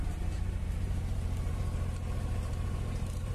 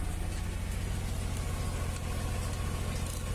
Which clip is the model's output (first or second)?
first